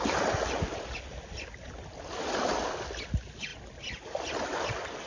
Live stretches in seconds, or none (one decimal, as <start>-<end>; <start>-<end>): 0.0-3.5